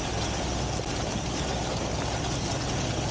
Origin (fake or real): real